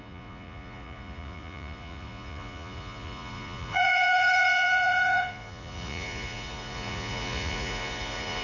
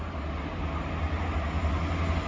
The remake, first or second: first